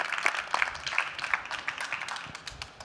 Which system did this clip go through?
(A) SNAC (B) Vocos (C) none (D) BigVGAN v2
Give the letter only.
C